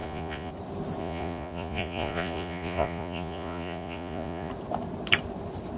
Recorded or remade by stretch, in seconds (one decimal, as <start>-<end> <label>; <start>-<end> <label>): 0.0-0.5 remade; 0.5-1.0 recorded; 1.0-4.5 remade; 4.5-5.8 recorded